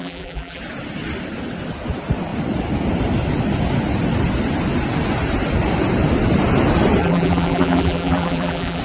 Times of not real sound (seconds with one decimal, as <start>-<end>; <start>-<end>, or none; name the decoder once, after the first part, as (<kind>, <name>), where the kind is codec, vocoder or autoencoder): 0.0-0.6 (vocoder, BigVGAN v2); 7.0-8.8